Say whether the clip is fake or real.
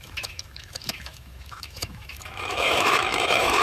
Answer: fake